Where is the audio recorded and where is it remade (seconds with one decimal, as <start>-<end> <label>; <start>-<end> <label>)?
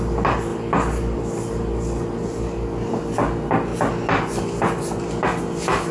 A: 0.0-5.9 recorded